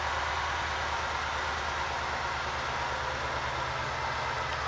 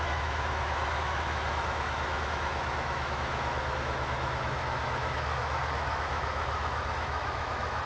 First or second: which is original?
first